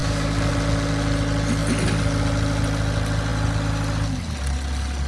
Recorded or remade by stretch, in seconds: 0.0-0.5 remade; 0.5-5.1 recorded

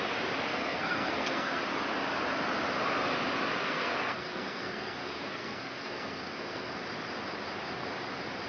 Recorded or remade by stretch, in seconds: 0.0-0.5 recorded; 0.5-1.6 remade; 1.6-3.6 recorded; 3.6-6.8 remade; 6.8-8.5 recorded

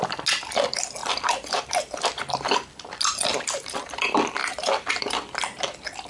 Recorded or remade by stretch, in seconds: 0.0-1.0 recorded; 1.0-1.9 remade; 1.9-3.3 recorded; 3.3-4.0 remade; 4.0-6.1 recorded

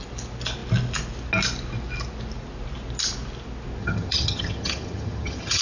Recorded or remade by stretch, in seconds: 0.0-3.8 recorded; 3.8-5.6 remade

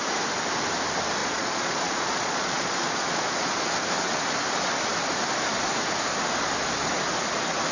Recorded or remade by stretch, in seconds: 0.0-1.2 recorded; 1.2-3.6 remade; 3.6-7.7 recorded